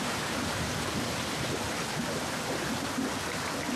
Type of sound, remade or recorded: recorded